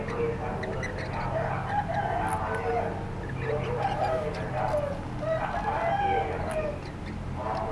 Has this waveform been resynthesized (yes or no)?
no